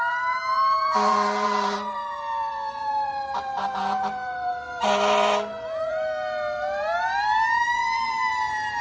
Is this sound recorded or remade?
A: remade